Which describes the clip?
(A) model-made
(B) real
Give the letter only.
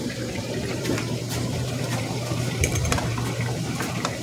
A